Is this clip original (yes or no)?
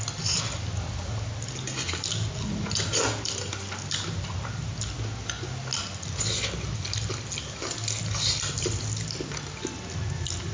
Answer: yes